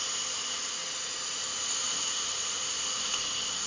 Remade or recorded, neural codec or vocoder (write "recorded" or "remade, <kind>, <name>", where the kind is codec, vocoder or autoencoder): recorded